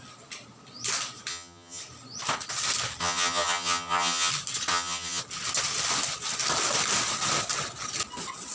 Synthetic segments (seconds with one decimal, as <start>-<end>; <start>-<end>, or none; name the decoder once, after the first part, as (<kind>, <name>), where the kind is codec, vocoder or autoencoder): 1.3-1.8 (vocoder, HiFi-GAN); 3.0-4.3; 4.7-5.2